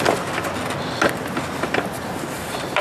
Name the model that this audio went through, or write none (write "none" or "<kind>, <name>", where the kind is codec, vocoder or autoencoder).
none